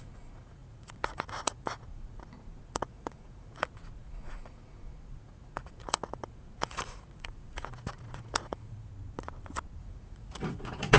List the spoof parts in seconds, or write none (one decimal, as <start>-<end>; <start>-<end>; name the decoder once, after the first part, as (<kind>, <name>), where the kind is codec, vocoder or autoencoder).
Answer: 0.0-8.9 (vocoder, Vocos); 9.8-11.0

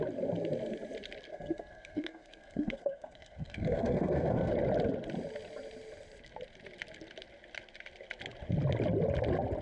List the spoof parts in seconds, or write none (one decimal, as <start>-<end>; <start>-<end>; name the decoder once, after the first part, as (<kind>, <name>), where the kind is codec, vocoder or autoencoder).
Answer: 1.3-4.5 (codec, SNAC)